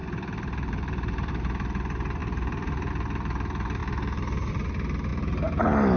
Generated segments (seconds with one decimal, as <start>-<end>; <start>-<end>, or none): 0.0-1.3; 2.2-2.9; 3.8-4.5